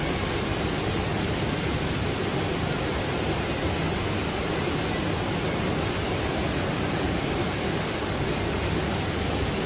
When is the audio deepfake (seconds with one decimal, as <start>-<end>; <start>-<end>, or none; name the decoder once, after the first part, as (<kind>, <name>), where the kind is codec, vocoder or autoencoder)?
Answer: 7.4-8.9 (codec, DAC)